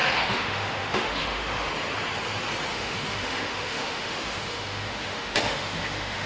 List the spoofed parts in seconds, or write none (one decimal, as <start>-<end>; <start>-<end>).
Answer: 0.0-1.7; 2.7-6.3